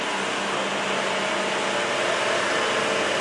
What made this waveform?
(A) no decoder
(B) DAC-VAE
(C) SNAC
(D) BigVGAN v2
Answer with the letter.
A